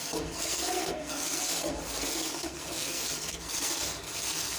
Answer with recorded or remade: remade